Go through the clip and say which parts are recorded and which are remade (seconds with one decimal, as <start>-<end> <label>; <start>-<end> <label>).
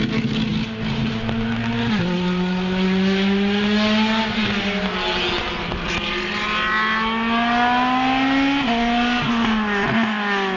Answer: 0.0-10.6 recorded